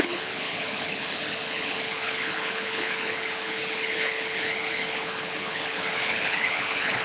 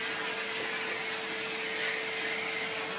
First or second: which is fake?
first